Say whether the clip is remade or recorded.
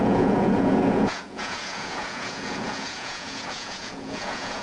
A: remade